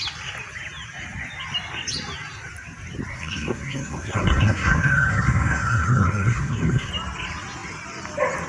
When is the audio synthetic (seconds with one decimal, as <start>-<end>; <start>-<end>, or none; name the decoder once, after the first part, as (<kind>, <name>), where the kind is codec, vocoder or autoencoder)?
3.1-6.9 (codec, SNAC)